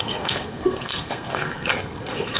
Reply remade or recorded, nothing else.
remade